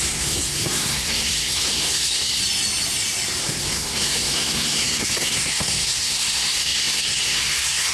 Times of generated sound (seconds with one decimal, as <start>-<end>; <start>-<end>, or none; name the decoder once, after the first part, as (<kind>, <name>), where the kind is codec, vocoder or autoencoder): 0.0-2.4 (codec, SNAC); 3.4-7.9